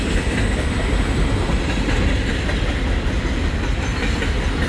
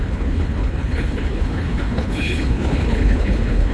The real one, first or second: first